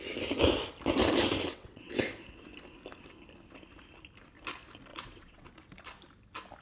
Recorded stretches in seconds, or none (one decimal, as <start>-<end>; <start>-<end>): 0.0-1.5; 2.0-4.9; 5.5-6.6